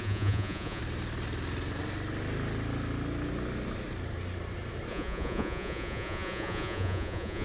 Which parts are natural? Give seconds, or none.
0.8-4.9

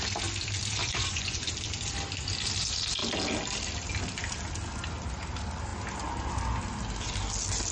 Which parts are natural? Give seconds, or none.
0.0-0.8; 1.5-7.7

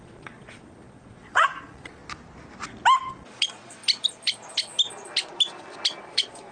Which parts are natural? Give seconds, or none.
2.0-3.1; 3.8-6.0

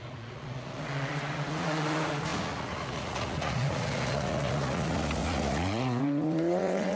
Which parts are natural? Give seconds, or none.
none

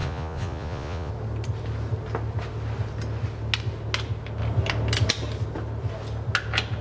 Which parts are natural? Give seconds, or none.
1.1-6.8

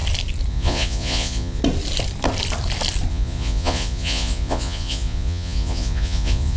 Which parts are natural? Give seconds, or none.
0.0-0.5; 1.6-3.1

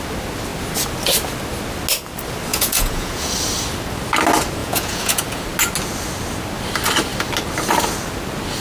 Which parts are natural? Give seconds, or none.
0.0-2.5; 3.3-4.6; 5.4-8.6

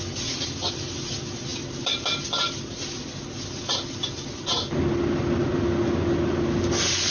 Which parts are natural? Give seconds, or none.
0.0-7.1